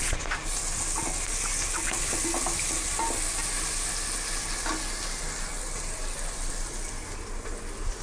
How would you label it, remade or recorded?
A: recorded